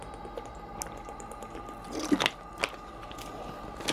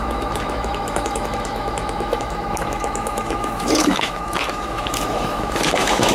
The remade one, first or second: second